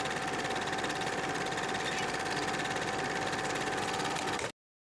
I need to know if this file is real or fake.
real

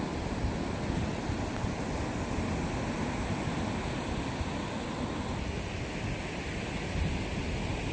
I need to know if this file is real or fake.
real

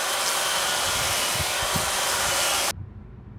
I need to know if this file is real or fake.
real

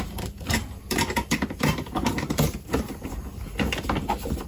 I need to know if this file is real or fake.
fake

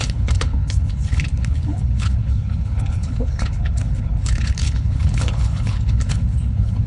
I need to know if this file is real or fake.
fake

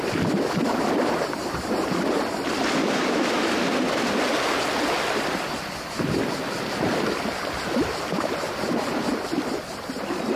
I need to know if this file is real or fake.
real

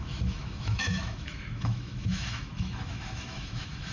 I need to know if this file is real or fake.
fake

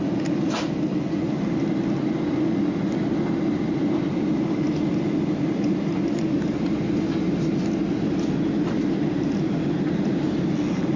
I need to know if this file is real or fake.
real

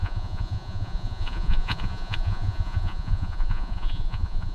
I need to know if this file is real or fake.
fake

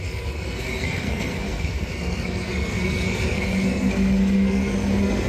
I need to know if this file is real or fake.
fake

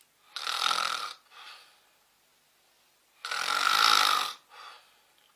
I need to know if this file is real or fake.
real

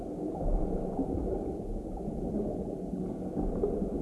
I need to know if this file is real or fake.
real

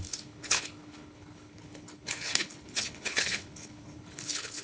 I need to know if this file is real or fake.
fake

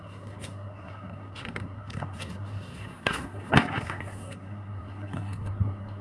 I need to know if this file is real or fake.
fake